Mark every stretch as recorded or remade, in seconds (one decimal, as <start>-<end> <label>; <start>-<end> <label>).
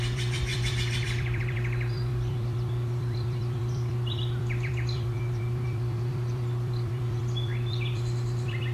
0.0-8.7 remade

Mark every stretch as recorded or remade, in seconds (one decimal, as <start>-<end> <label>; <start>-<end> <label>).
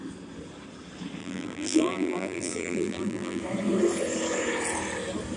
0.0-1.2 recorded; 1.2-3.4 remade; 3.4-5.4 recorded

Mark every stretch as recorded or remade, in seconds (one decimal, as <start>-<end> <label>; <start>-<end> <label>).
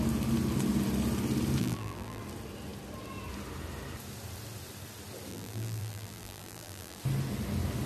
0.0-1.6 recorded; 1.6-2.2 remade; 2.2-5.3 recorded; 5.3-7.0 remade; 7.0-7.9 recorded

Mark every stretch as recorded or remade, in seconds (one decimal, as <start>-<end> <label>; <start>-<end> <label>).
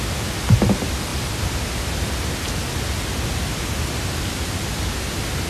0.0-5.5 recorded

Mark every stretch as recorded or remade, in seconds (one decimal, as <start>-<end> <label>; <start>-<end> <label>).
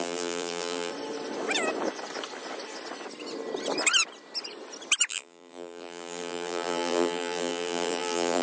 0.0-0.9 remade; 0.9-5.1 recorded; 5.1-8.4 remade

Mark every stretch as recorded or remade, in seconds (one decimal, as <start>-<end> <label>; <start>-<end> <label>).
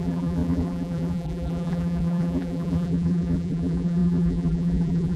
0.0-5.2 remade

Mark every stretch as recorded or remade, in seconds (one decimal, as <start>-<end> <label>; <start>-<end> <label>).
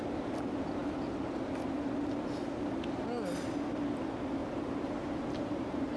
0.0-4.4 recorded; 4.4-6.0 remade